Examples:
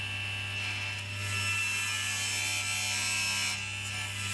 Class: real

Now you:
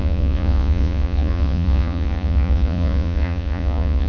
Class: fake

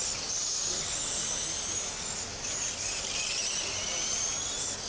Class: real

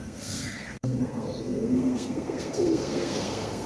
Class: fake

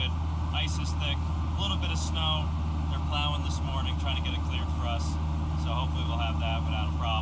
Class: real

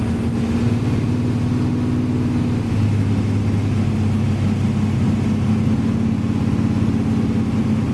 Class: real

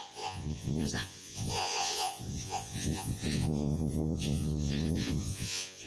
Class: fake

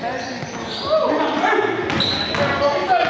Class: real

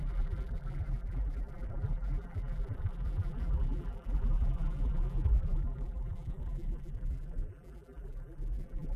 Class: fake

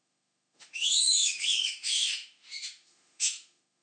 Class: fake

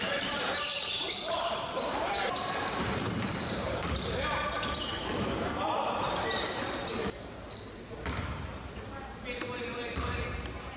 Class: fake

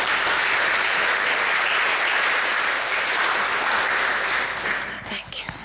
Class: real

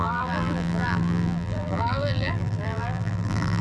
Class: fake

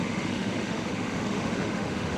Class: fake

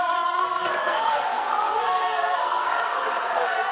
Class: fake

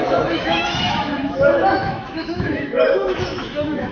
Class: fake